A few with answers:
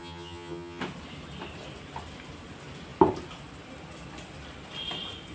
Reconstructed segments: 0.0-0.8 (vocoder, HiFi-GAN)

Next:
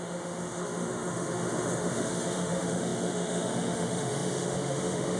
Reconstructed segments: 0.0-5.2 (autoencoder, DAC-VAE)

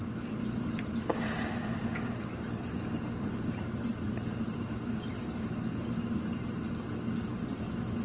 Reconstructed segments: 2.3-4.0 (vocoder, BigVGAN v2); 4.5-6.1

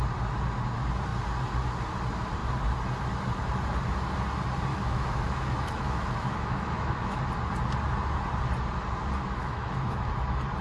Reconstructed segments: 4.7-7.2 (autoencoder, DAC-VAE); 9.4-10.1

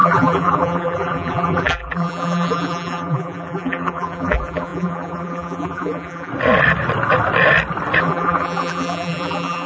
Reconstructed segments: 0.0-6.3 (vocoder, BigVGAN v2); 8.0-9.7

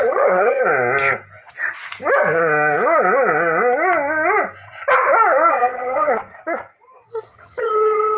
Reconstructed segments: 0.0-0.6 (vocoder, HiFi-GAN); 5.5-6.2; 7.3-8.2